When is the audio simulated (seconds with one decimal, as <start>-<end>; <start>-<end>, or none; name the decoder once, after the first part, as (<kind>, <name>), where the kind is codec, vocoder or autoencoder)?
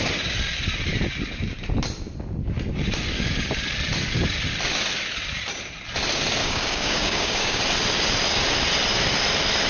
6.4-7.6 (codec, DAC)